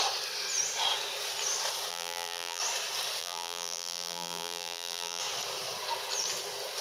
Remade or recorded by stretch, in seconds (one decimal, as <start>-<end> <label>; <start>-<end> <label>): 0.0-1.9 recorded; 1.9-2.6 remade; 2.6-3.2 recorded; 3.2-5.2 remade; 5.2-6.8 recorded